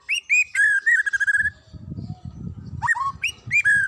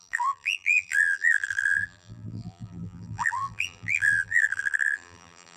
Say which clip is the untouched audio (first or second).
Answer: first